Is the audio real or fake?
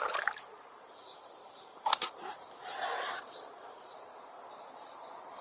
fake